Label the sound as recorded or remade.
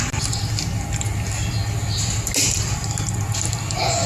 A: recorded